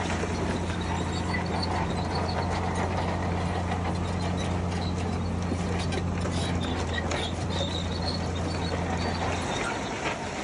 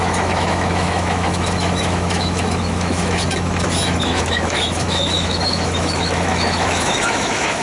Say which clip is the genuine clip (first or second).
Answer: first